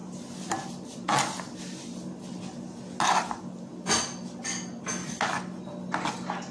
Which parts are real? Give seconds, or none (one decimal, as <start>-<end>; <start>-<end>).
0.0-6.5